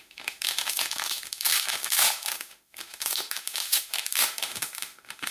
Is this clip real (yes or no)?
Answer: no